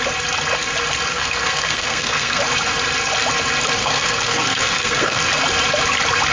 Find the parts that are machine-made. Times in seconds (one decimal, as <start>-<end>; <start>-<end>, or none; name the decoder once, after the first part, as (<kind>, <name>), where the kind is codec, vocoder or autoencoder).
1.1-2.4 (codec, SNAC); 3.8-5.2